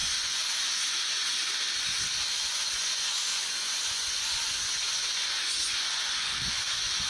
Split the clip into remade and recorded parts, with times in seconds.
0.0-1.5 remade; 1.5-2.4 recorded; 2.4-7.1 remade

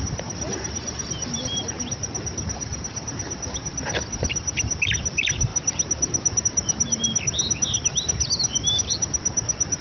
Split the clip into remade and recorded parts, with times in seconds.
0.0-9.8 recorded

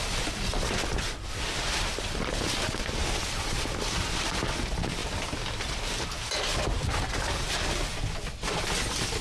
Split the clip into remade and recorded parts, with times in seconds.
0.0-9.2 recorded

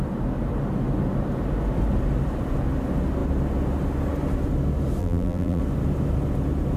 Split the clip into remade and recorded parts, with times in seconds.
0.0-5.0 recorded; 5.0-5.6 remade; 5.6-6.8 recorded

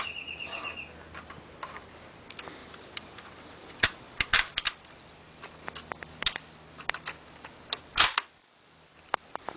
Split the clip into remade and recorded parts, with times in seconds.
0.0-2.6 recorded; 2.6-4.1 remade; 4.1-9.6 recorded

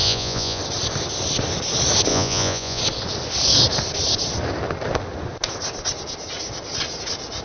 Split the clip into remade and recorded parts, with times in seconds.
0.0-0.6 remade; 0.6-2.1 recorded; 2.1-2.8 remade; 2.8-7.4 recorded

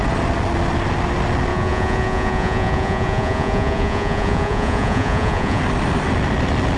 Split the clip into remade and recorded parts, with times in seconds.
0.0-1.5 recorded; 1.5-5.6 remade; 5.6-6.8 recorded

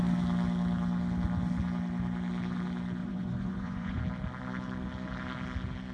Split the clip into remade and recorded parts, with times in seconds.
0.0-3.0 recorded; 3.0-4.0 remade; 4.0-5.9 recorded